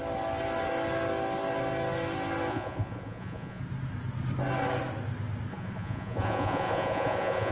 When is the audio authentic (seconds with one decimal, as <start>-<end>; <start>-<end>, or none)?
0.0-2.5; 3.6-5.5